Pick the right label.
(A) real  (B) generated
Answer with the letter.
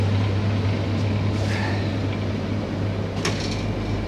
A